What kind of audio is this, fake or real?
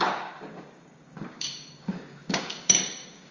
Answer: fake